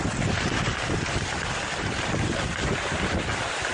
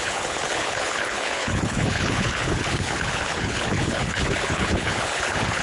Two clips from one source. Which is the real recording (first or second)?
first